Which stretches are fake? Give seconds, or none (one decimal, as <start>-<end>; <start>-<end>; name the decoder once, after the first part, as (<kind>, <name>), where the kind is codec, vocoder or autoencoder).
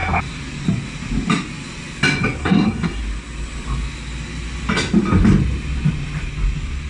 2.4-3.0 (codec, SNAC)